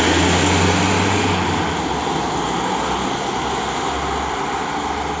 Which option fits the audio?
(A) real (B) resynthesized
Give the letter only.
A